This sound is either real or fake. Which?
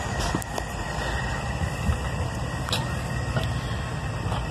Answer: real